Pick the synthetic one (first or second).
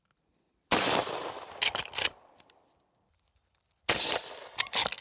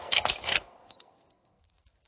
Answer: second